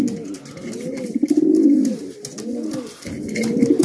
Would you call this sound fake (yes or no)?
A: no